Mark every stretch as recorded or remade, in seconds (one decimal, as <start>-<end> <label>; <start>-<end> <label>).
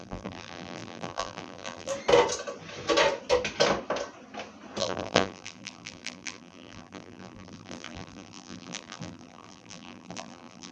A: 0.0-1.9 remade; 1.9-4.8 recorded; 4.8-10.7 remade